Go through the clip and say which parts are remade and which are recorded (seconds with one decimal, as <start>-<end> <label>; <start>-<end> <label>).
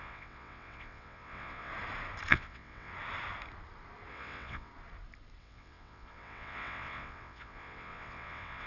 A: 0.0-1.7 remade; 1.7-2.3 recorded; 2.3-2.9 remade; 2.9-4.1 recorded; 4.1-4.7 remade; 4.7-5.4 recorded; 5.4-8.7 remade